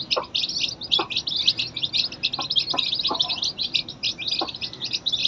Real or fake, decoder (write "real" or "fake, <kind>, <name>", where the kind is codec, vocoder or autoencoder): real